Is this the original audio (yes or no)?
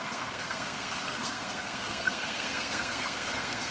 no